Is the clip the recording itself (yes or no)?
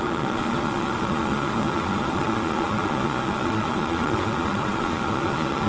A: no